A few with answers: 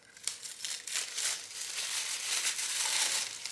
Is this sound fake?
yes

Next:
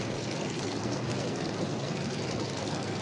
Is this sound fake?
yes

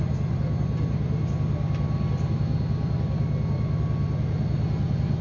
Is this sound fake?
no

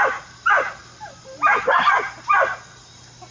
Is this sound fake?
no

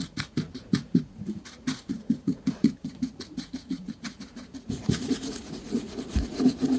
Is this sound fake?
yes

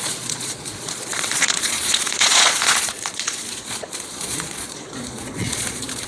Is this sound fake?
yes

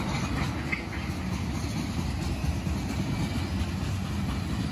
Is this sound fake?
no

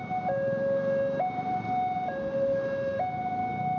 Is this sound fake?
no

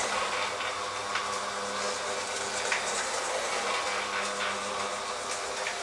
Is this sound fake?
no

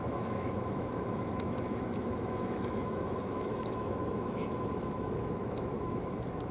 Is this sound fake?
yes